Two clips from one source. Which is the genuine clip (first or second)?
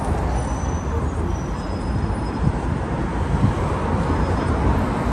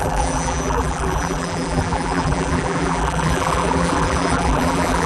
first